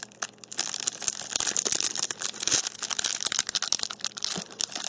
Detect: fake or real real